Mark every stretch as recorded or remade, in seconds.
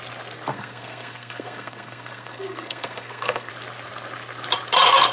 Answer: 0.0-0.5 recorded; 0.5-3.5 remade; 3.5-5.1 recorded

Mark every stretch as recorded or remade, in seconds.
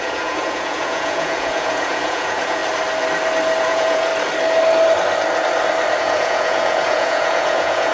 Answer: 0.0-2.6 remade; 2.6-3.6 recorded; 3.6-4.1 remade; 4.1-6.0 recorded; 6.0-7.9 remade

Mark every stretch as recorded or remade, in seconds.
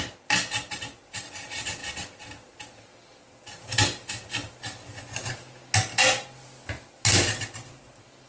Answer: 0.0-8.3 recorded